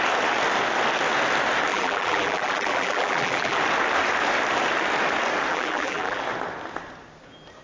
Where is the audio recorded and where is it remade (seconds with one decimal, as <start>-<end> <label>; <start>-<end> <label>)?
0.0-1.7 recorded; 1.7-3.6 remade; 3.6-5.5 recorded; 5.5-6.2 remade; 6.2-7.6 recorded